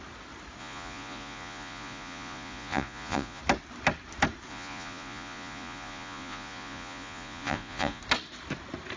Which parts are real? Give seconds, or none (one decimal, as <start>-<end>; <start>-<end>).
0.0-0.6; 3.4-4.5; 8.0-9.0